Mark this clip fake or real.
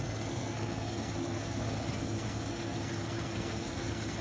fake